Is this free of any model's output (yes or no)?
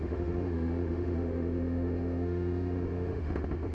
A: no